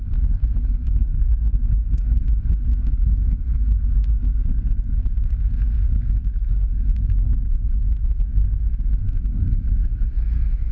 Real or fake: fake